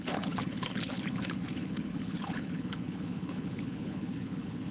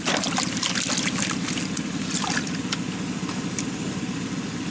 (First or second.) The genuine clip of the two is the second